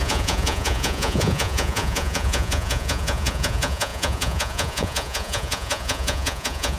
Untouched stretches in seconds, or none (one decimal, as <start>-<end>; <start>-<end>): none